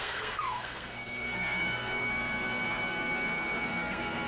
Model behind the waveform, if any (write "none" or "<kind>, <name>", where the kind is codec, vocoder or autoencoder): codec, SNAC